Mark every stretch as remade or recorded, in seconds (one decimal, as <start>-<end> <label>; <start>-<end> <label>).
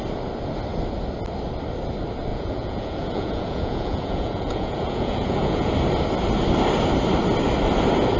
0.0-2.3 recorded; 2.3-5.7 remade; 5.7-8.2 recorded